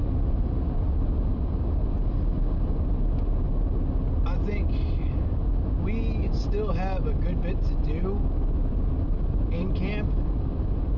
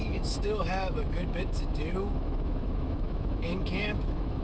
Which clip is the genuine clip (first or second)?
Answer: first